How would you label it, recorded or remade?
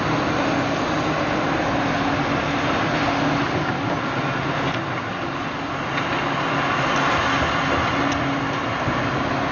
recorded